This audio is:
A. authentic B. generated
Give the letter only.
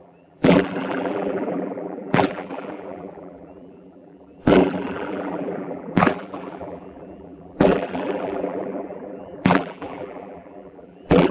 B